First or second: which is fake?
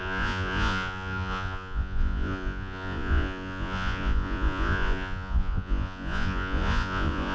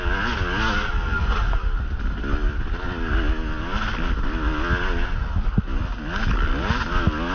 first